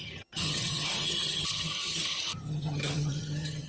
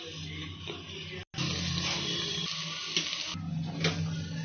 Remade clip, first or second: first